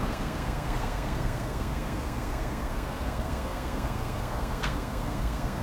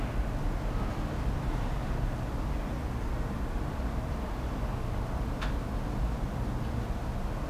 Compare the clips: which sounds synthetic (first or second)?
first